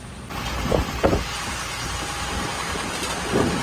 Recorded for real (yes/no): yes